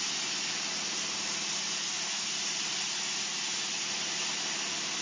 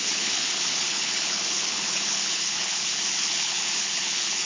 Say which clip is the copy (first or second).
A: second